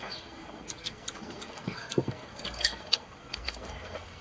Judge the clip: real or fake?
fake